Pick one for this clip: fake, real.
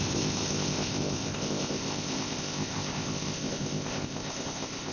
fake